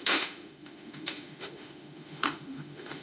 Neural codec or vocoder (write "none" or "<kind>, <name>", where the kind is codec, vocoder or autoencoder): autoencoder, DAC-VAE